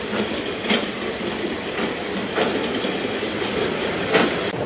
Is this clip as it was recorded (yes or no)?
yes